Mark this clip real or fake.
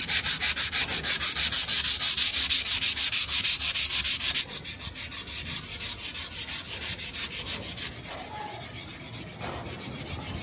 real